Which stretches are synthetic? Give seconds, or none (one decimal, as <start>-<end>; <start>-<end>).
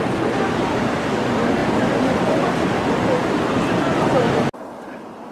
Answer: none